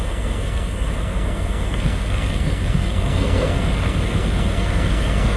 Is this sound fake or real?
fake